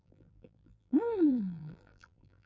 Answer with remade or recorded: remade